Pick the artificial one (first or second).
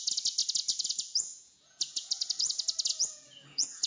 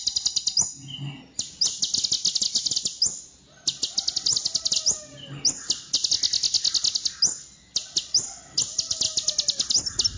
first